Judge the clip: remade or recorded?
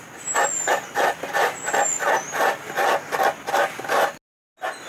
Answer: recorded